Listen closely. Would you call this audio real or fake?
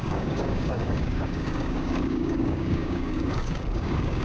fake